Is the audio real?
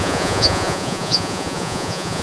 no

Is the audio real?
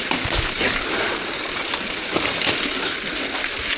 yes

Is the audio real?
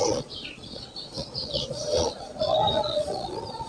no